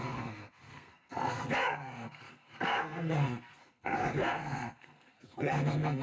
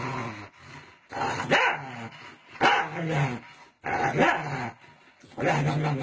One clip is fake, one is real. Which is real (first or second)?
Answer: second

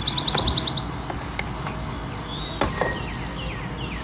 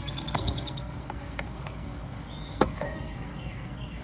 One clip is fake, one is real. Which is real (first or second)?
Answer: first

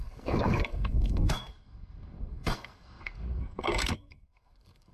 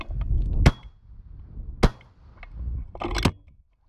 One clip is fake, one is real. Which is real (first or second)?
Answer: second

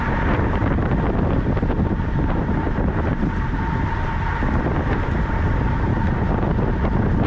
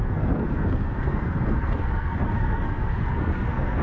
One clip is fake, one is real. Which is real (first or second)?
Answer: first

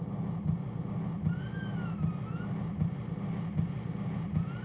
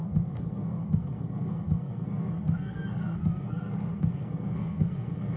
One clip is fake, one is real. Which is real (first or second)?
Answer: first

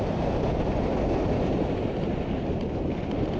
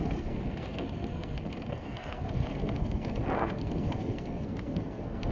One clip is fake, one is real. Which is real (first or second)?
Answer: first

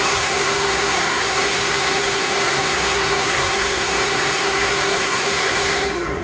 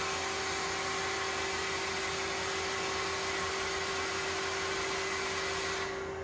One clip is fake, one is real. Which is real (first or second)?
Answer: second